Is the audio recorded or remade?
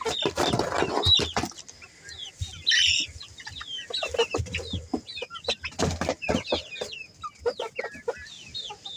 recorded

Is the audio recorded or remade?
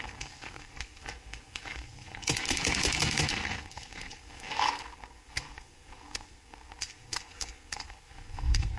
remade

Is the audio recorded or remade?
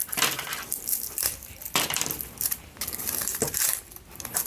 remade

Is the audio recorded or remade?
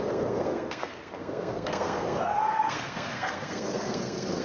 remade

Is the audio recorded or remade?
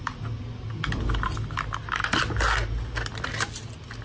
recorded